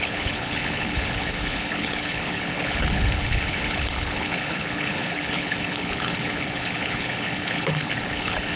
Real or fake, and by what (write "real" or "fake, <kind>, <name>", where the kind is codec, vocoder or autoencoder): fake, codec, HILCodec